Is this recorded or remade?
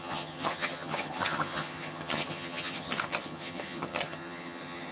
remade